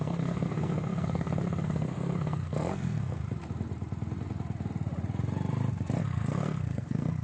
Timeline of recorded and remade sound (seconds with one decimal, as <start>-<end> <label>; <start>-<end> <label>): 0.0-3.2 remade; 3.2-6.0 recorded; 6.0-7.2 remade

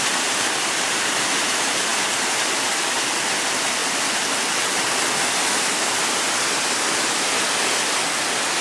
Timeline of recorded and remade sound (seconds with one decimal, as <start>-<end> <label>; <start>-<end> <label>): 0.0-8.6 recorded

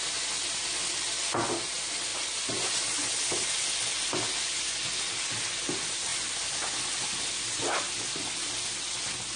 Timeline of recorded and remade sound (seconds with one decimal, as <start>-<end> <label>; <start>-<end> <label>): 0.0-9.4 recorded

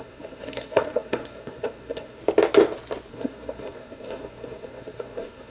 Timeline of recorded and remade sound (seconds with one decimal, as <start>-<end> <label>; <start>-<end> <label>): 0.0-2.2 remade; 2.2-3.1 recorded; 3.1-5.5 remade

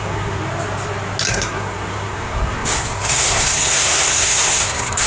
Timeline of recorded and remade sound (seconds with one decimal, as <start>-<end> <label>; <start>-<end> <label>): 0.0-0.4 remade; 0.4-1.3 recorded; 1.3-5.1 remade